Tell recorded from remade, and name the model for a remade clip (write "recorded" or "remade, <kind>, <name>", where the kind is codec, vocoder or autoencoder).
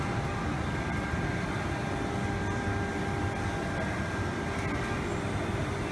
recorded